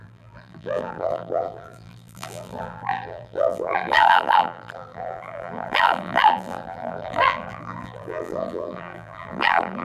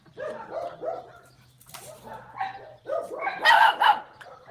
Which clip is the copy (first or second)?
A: first